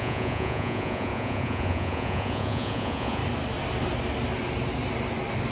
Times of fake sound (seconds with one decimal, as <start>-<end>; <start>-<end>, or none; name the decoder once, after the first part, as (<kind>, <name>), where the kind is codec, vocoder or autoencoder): 0.0-3.2 (vocoder, Vocos)